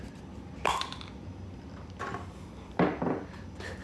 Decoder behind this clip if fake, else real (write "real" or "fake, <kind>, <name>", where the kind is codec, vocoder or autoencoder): real